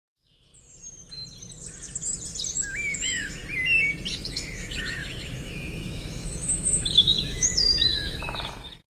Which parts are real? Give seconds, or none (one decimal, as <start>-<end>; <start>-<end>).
0.5-2.5; 3.4-4.1